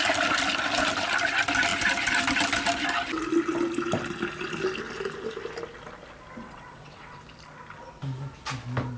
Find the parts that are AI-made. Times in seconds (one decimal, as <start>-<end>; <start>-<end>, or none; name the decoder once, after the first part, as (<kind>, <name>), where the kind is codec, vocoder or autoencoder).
6.4-7.2 (vocoder, WaveNeXt)

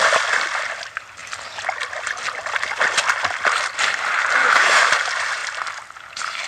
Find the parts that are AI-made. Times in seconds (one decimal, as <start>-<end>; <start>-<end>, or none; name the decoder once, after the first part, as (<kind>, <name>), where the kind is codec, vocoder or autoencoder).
4.4-4.9 (autoencoder, DAC-VAE)

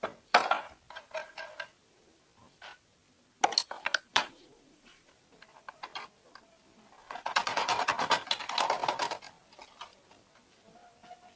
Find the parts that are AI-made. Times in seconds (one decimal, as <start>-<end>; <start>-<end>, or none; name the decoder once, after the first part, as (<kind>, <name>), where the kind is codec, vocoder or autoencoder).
4.1-5.1 (vocoder, Vocos); 7.0-7.7

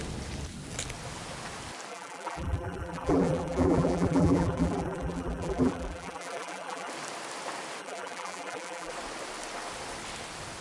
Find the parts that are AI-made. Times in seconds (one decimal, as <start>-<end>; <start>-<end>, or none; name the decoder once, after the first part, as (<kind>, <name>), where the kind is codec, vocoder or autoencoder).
1.9-6.9 (vocoder, BigVGAN v2); 7.8-8.9